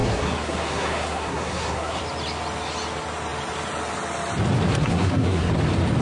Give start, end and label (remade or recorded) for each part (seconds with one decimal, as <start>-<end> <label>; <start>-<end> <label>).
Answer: 0.0-2.0 remade; 2.0-4.8 recorded; 4.8-5.5 remade; 5.5-6.0 recorded